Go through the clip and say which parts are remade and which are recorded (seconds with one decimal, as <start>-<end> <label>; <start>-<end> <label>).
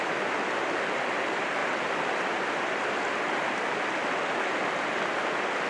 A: 0.0-1.6 recorded; 1.6-2.2 remade; 2.2-5.7 recorded